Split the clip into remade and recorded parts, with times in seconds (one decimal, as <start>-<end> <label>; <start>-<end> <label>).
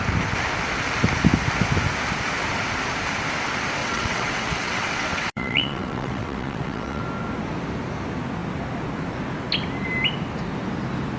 0.0-3.8 recorded; 3.8-7.0 remade; 7.0-11.2 recorded